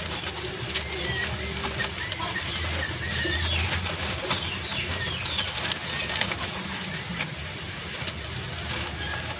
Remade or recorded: recorded